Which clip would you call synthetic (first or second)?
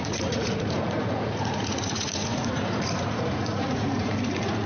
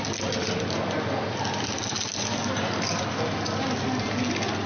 first